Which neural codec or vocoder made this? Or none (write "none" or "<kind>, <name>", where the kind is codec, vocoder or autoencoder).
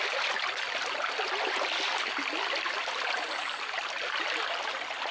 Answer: none